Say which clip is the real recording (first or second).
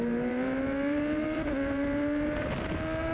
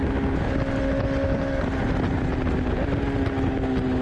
second